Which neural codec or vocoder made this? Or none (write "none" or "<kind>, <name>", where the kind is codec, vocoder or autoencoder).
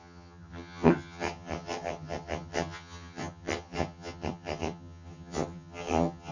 vocoder, HiFi-GAN